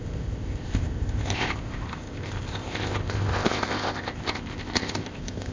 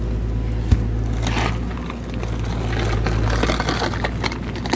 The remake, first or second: first